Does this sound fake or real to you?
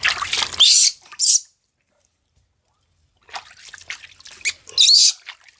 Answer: real